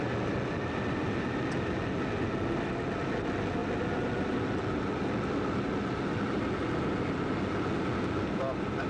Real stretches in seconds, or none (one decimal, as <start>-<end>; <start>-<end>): 0.0-8.9